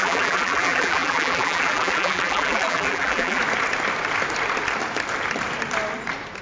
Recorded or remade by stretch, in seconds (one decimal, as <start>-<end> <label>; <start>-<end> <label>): 0.0-3.4 remade; 3.4-6.4 recorded